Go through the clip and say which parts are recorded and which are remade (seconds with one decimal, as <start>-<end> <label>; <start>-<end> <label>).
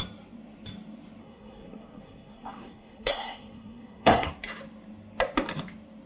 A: 0.0-1.2 recorded; 1.2-4.3 remade; 4.3-6.1 recorded